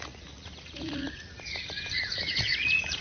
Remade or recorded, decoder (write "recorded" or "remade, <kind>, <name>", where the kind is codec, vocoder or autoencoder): remade, vocoder, Vocos